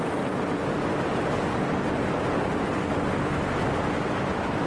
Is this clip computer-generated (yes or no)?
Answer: no